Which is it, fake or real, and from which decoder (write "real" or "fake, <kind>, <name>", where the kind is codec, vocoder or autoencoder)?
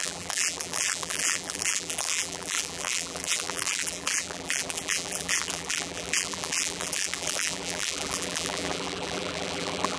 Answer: fake, vocoder, BigVGAN v2